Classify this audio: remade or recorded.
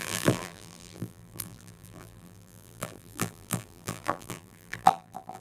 remade